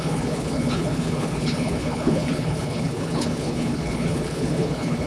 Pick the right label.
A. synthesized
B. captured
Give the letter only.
A